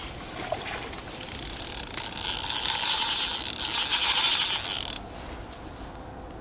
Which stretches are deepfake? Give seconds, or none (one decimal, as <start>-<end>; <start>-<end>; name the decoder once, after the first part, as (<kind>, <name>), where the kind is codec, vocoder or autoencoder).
none